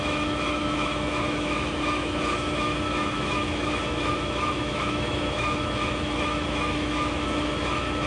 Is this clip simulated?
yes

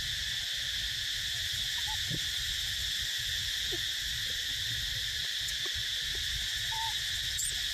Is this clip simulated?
no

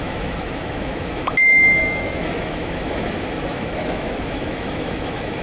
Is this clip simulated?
yes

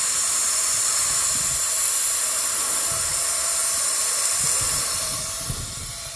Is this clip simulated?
no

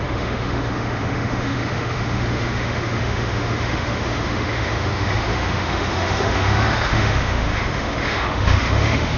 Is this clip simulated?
yes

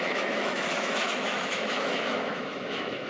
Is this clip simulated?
yes